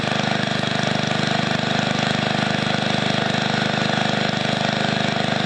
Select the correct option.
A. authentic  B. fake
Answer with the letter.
A